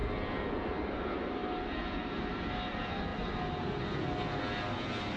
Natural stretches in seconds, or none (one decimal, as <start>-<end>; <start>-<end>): 0.0-5.2